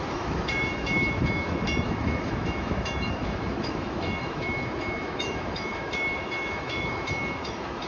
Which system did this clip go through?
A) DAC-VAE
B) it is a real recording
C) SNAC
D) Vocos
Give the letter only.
A